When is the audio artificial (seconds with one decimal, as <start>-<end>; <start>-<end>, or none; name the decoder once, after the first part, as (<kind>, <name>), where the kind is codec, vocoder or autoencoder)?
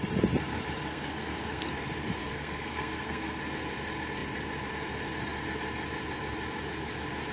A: 0.9-1.7 (codec, SNAC); 2.2-3.4